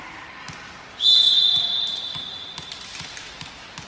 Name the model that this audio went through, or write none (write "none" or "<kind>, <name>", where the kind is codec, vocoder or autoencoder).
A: none